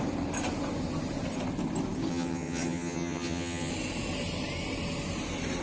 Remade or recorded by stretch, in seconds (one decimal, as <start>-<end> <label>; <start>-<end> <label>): 0.0-2.1 recorded; 2.1-3.7 remade; 3.7-5.6 recorded